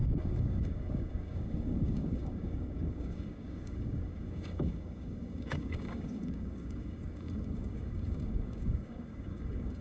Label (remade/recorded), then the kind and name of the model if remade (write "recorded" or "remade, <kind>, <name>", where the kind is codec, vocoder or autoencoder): remade, codec, DAC